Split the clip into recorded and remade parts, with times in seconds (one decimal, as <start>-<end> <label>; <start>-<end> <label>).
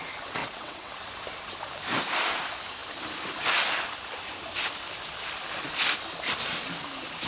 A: 0.0-0.4 recorded; 0.4-0.9 remade; 0.9-7.3 recorded